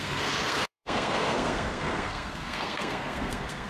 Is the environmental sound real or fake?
fake